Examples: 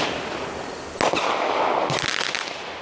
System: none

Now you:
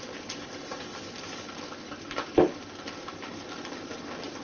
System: none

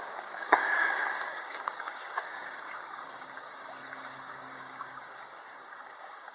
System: codec, DAC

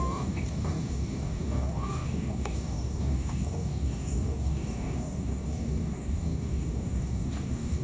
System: codec, DAC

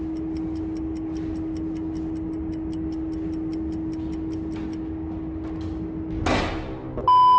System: none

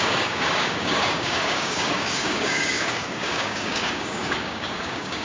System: codec, DAC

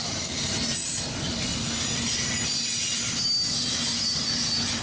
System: none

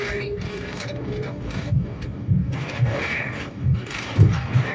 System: codec, DAC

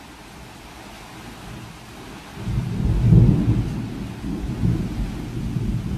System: none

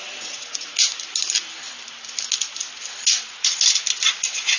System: none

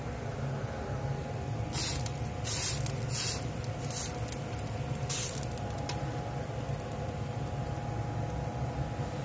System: none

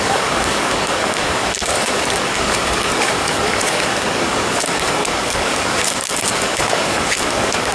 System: codec, DAC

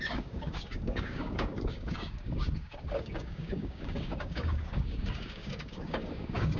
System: codec, DAC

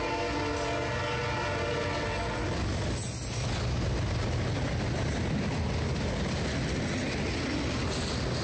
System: none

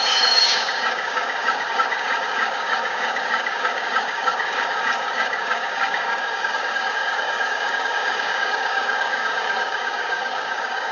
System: codec, DAC